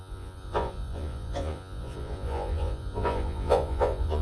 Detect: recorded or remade remade